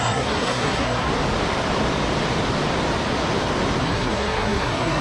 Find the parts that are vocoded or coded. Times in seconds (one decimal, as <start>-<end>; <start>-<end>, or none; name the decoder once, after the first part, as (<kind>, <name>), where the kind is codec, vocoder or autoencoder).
0.0-1.1 (codec, SNAC); 3.8-5.0